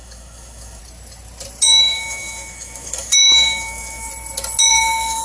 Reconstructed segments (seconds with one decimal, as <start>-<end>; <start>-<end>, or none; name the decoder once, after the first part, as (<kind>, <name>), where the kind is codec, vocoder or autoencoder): 0.0-0.8 (autoencoder, DAC-VAE); 1.8-4.1; 4.7-5.2